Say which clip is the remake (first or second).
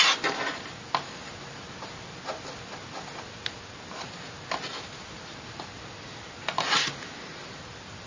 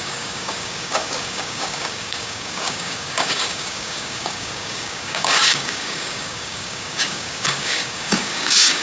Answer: second